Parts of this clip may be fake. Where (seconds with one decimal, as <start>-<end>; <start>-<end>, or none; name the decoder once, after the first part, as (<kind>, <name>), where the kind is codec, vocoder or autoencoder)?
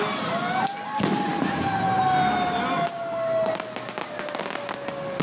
none